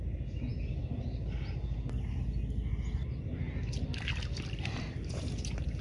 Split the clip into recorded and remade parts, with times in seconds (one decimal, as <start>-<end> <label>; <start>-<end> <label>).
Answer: 0.0-5.8 recorded